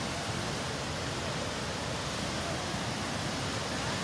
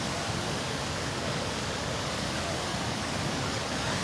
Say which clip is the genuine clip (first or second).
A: first